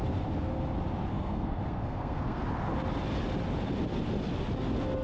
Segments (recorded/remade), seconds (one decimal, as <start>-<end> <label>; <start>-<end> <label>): 0.0-1.1 recorded; 1.1-2.4 remade; 2.4-5.0 recorded